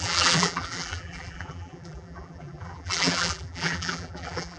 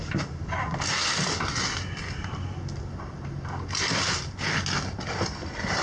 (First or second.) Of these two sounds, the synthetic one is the first